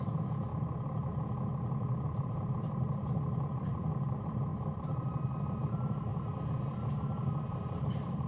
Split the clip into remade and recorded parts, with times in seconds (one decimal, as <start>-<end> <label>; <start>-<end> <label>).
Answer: 0.0-0.5 remade; 0.5-2.2 recorded; 2.2-6.1 remade; 6.1-6.9 recorded; 6.9-8.3 remade